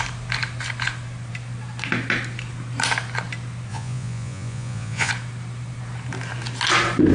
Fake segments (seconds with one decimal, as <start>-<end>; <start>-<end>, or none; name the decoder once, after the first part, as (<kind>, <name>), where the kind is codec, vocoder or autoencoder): 3.7-5.1 (vocoder, Vocos)